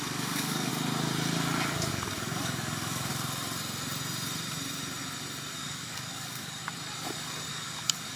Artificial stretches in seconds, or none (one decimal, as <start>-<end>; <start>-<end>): 0.0-0.7; 1.9-3.1; 5.5-6.6; 7.5-8.2